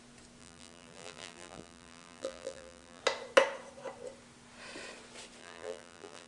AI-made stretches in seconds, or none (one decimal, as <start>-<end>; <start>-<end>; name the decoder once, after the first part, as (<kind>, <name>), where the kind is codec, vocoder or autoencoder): 0.4-3.0 (vocoder, BigVGAN v2); 5.4-6.3